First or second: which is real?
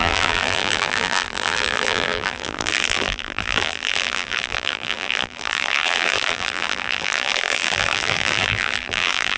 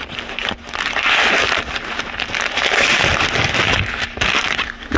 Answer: second